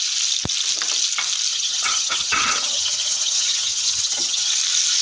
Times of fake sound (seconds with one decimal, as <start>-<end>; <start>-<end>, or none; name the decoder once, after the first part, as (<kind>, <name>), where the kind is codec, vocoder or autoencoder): 1.5-4.5 (vocoder, HiFi-GAN)